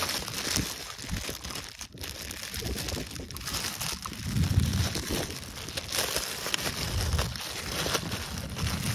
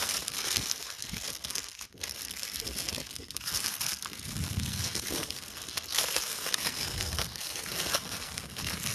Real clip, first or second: first